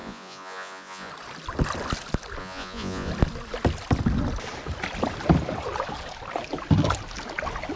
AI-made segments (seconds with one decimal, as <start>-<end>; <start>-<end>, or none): 0.0-1.1; 2.4-3.1